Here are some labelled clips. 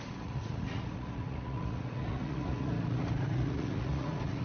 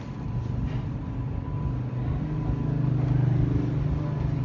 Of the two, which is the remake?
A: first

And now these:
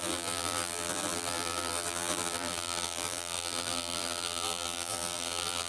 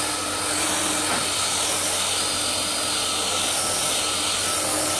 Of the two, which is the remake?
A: first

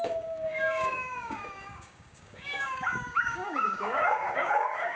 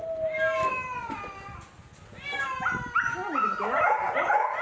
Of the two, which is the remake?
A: first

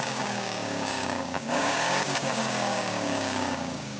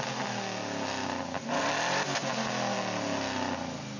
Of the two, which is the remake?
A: first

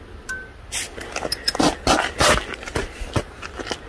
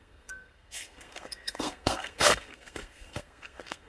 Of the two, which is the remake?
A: second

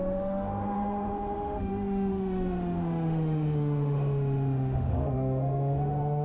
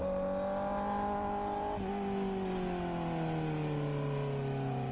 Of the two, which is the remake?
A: first